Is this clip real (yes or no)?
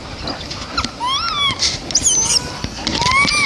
yes